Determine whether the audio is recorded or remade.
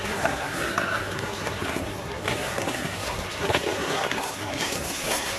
remade